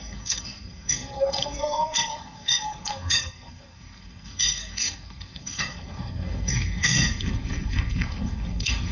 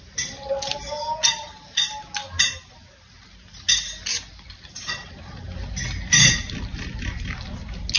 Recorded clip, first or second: second